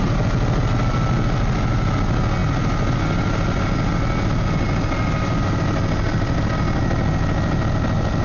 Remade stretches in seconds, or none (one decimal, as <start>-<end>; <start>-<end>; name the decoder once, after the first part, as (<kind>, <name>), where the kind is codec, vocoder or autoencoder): none